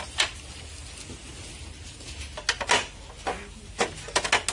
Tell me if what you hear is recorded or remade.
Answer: recorded